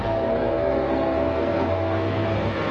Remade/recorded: remade